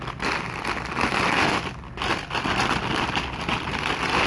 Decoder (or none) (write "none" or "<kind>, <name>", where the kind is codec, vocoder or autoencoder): none